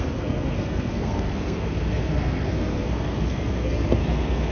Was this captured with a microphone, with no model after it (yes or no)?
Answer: no